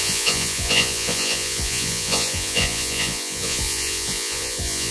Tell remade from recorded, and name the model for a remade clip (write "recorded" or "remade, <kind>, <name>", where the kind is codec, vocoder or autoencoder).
remade, vocoder, Vocos